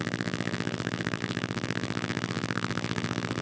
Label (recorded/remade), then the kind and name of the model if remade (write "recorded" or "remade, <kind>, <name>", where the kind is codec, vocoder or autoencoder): remade, vocoder, BigVGAN v2